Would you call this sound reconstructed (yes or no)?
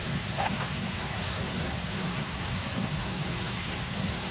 yes